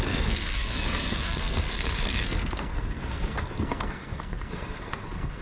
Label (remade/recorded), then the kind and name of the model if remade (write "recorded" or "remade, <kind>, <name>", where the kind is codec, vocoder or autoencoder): remade, codec, SNAC